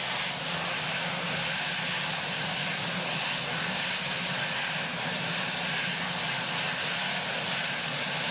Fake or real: real